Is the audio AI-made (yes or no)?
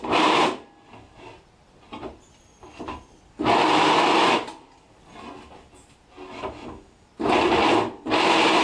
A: no